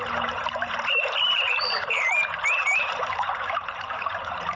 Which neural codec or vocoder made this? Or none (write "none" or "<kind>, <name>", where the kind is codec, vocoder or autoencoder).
vocoder, BigVGAN v2